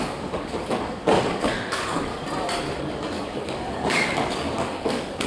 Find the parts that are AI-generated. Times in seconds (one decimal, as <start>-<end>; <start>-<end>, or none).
0.0-2.1; 2.8-5.3